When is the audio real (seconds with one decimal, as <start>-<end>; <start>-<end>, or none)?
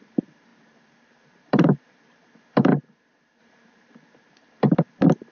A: 2.7-3.4